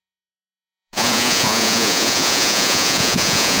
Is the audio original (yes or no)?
no